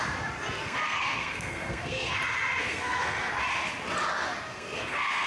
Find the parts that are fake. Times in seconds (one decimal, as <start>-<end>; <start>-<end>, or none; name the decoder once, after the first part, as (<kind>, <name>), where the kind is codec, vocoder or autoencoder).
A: 0.6-2.1 (codec, SNAC); 2.6-3.3; 4.5-5.3